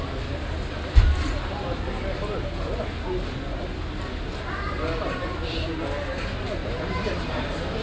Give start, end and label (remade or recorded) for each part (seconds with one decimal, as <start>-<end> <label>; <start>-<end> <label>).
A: 0.0-7.8 recorded